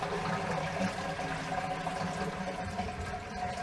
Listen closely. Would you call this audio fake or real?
real